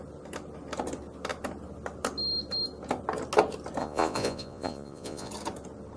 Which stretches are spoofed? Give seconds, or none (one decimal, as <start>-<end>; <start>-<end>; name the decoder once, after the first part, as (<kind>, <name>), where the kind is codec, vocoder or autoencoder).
3.8-5.3 (vocoder, Vocos)